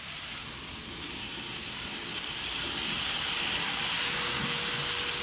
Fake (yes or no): no